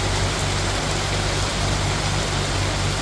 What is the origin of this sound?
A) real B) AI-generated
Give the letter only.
A